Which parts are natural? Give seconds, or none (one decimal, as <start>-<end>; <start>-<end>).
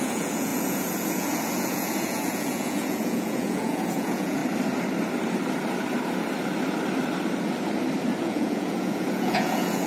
4.4-8.2